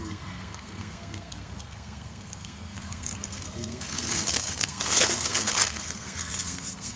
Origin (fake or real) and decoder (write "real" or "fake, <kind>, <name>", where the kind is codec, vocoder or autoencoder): fake, codec, SNAC